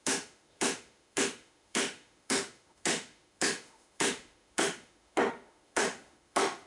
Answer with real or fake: fake